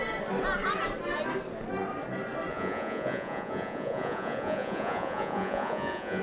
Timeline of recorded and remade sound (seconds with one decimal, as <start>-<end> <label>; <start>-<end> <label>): 0.0-2.5 recorded; 2.5-6.2 remade